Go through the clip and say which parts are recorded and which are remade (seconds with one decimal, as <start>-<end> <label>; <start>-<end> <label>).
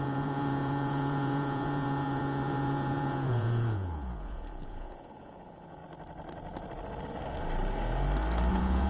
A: 0.0-5.8 remade; 5.8-8.5 recorded; 8.5-8.9 remade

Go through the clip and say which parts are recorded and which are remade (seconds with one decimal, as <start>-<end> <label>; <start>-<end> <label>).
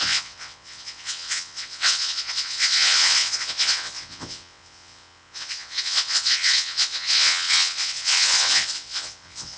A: 0.0-9.6 remade